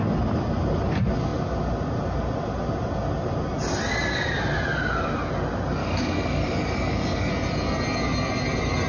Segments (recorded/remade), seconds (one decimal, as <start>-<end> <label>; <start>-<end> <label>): 0.0-5.8 recorded; 5.8-7.3 remade; 7.3-8.9 recorded